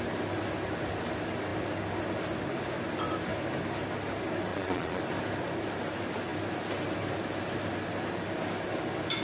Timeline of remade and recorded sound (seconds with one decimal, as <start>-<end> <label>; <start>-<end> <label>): 0.0-4.5 recorded; 4.5-5.0 remade; 5.0-9.2 recorded